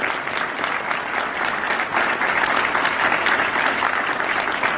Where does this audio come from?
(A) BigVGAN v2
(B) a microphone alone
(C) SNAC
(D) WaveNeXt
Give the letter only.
B